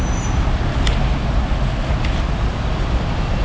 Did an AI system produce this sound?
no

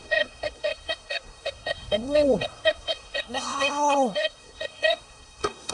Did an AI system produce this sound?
yes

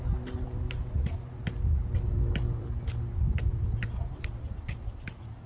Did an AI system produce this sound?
no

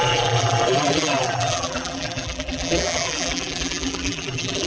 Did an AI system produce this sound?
yes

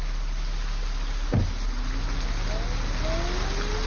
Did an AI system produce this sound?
no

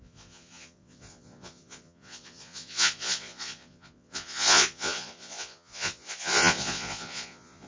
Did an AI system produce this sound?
yes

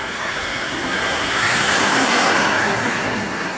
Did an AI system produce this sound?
yes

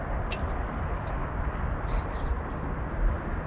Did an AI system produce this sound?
no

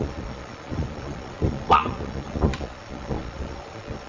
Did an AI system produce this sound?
yes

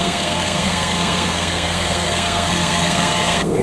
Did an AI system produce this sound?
yes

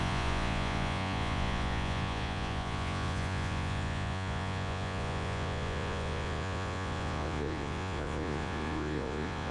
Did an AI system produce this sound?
yes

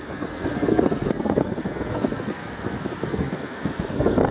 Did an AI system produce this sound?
yes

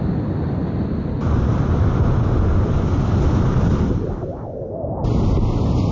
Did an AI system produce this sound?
no